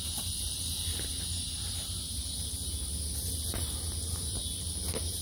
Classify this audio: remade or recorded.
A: remade